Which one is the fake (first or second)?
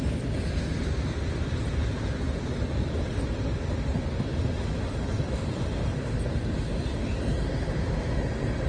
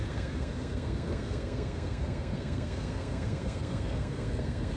second